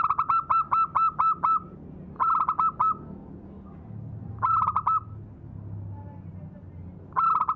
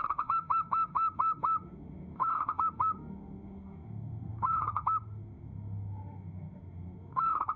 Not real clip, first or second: second